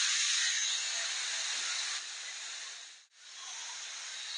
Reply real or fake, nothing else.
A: real